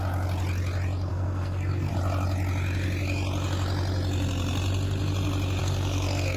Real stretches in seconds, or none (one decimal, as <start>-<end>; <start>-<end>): 0.0-1.1; 1.9-5.6